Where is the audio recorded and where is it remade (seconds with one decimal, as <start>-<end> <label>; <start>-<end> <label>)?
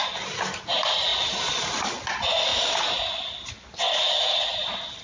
0.0-5.0 recorded